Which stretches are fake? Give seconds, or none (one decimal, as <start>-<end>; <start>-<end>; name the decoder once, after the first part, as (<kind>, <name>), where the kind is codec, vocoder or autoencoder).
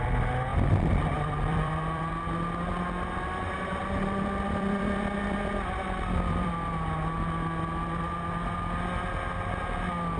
0.5-2.1 (vocoder, BigVGAN v2); 3.8-6.5